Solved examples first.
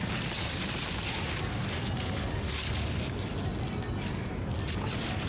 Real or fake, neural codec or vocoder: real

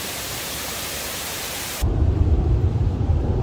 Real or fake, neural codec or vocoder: fake, vocoder, BigVGAN v2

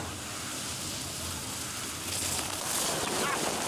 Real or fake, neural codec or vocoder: real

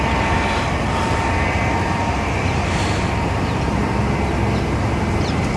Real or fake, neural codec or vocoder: fake, vocoder, BigVGAN v2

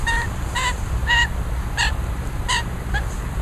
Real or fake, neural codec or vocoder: real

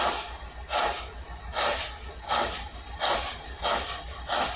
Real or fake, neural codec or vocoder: real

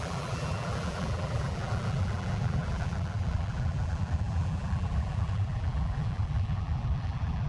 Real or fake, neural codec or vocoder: fake, vocoder, BigVGAN v2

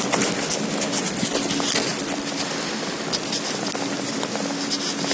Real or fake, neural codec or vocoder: real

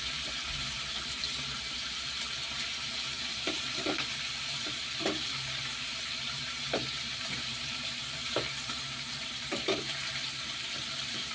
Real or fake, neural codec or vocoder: fake, vocoder, BigVGAN v2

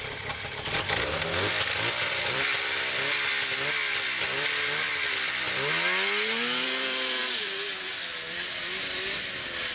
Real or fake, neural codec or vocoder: fake, vocoder, BigVGAN v2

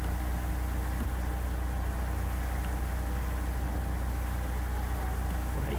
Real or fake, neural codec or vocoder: real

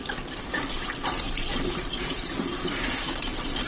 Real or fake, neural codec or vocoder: fake, vocoder, BigVGAN v2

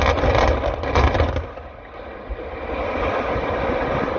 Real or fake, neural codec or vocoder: fake, vocoder, BigVGAN v2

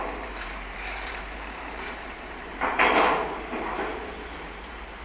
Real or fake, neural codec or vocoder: fake, vocoder, BigVGAN v2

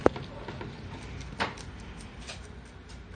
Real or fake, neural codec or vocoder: real